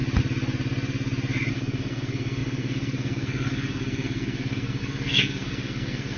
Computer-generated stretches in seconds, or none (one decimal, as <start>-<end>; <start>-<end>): 1.5-6.2